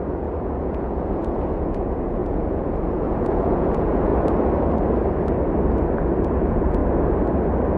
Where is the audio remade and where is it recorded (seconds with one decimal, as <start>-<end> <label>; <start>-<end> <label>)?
0.0-4.1 remade; 4.1-6.2 recorded; 6.2-6.8 remade; 6.8-7.8 recorded